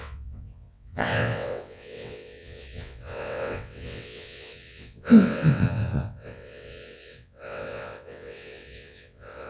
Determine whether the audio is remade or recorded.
remade